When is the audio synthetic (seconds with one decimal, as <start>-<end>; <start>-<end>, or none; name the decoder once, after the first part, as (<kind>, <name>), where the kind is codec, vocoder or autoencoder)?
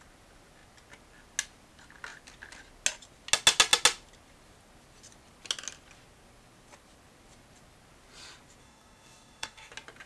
8.6-9.7 (codec, DAC)